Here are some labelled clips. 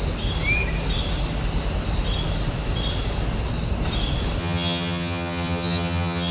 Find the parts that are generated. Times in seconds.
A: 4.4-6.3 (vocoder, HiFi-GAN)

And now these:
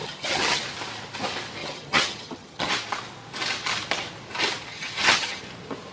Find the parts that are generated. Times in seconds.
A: 0.0-0.6 (vocoder, HiFi-GAN); 1.6-2.7; 4.7-5.4

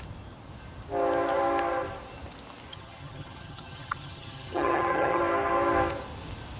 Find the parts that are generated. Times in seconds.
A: 2.7-5.2 (vocoder, HiFi-GAN)

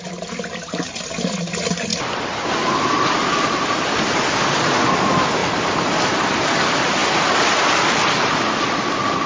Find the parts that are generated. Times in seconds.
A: none

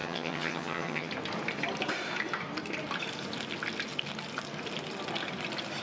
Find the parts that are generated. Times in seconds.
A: 0.0-1.1 (vocoder, HiFi-GAN)

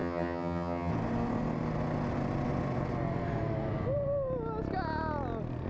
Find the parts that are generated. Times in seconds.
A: 0.0-0.9 (vocoder, HiFi-GAN)